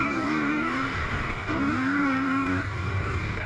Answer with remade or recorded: remade